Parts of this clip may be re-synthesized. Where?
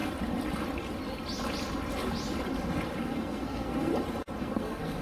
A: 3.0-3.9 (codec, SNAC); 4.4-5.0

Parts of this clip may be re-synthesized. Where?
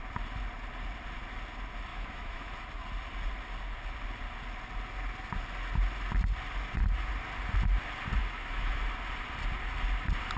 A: 1.9-2.5 (autoencoder, DAC-VAE); 8.2-8.8